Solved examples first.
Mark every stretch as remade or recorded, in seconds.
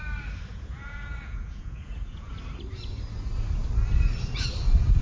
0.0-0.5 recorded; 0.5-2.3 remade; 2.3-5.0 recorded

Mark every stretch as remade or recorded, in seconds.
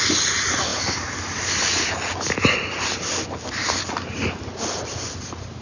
0.0-5.6 recorded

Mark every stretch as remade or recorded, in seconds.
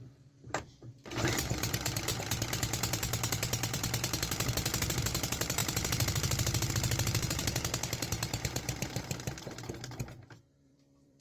0.0-7.4 remade; 7.4-8.5 recorded; 8.5-11.2 remade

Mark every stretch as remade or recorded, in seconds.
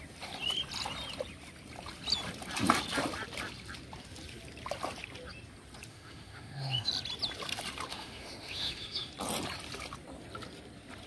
0.0-5.9 recorded; 5.9-6.9 remade; 6.9-7.9 recorded; 7.9-9.1 remade; 9.1-11.1 recorded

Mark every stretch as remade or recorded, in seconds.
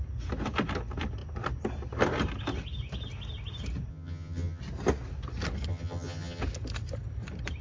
0.0-3.9 recorded; 3.9-4.6 remade; 4.6-5.7 recorded; 5.7-6.4 remade; 6.4-7.6 recorded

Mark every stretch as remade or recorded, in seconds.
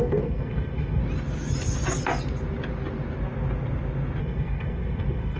0.0-1.0 remade; 1.0-4.2 recorded; 4.2-5.4 remade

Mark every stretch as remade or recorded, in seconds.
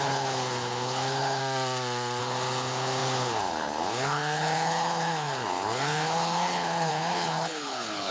0.0-1.4 remade; 1.4-2.2 recorded; 2.2-8.1 remade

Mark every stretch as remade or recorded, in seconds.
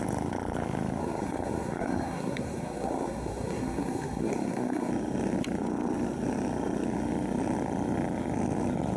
0.0-1.0 recorded; 1.0-4.9 remade; 4.9-9.0 recorded